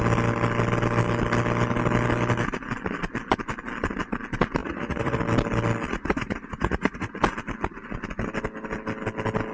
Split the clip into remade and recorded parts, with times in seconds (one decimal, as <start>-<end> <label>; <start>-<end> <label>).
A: 0.0-4.6 recorded; 4.6-5.2 remade; 5.2-5.9 recorded; 5.9-7.1 remade; 7.1-9.5 recorded